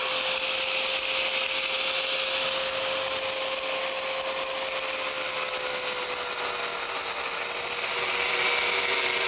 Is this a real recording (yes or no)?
yes